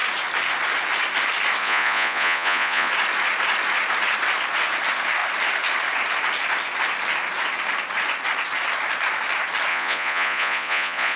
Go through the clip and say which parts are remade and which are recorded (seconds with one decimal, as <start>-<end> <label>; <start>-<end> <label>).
0.0-1.6 recorded; 1.6-2.9 remade; 2.9-9.7 recorded; 9.7-11.2 remade

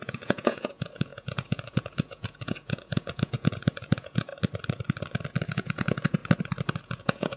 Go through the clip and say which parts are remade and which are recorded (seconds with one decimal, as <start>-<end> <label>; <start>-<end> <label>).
0.0-4.3 remade; 4.3-5.5 recorded; 5.5-6.2 remade; 6.2-6.8 recorded; 6.8-7.4 remade